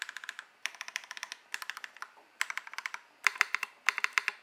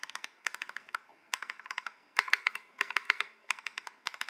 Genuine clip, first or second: first